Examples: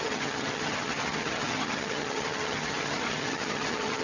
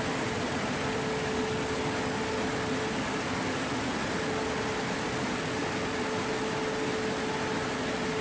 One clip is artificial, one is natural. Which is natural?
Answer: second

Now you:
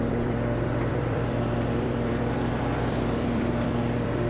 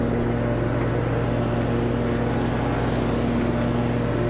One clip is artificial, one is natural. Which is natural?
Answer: second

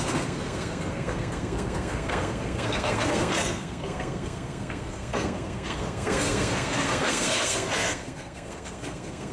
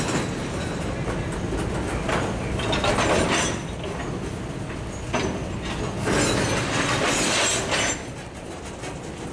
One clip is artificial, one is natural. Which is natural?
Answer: second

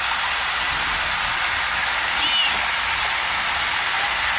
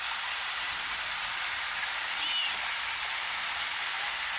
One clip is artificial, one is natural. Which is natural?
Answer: first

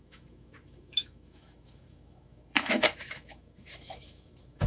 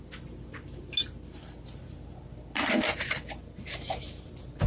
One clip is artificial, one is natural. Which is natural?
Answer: second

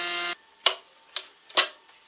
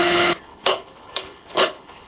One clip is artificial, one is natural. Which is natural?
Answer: first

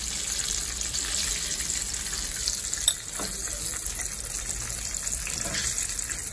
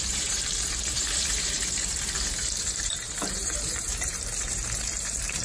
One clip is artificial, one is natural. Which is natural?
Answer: first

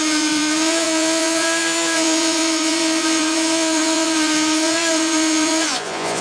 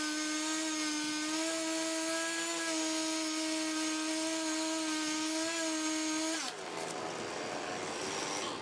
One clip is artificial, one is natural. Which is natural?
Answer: second